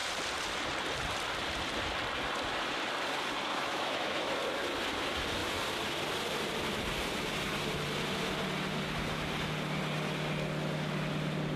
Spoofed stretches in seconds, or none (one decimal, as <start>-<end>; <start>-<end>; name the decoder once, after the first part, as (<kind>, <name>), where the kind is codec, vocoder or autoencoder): 3.5-4.3 (autoencoder, DAC-VAE)